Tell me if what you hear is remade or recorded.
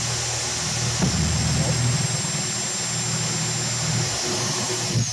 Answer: recorded